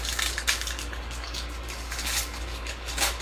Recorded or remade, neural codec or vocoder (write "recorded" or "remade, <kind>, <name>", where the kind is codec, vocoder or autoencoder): remade, codec, DAC